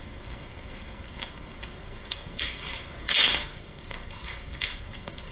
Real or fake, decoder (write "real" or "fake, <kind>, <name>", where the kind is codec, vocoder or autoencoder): fake, codec, SNAC